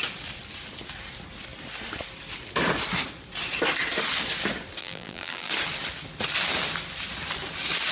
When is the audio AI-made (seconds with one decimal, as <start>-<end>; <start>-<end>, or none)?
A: 4.8-5.5